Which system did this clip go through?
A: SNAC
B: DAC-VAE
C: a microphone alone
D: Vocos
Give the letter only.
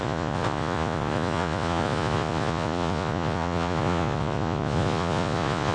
D